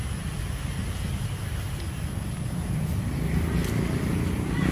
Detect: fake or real real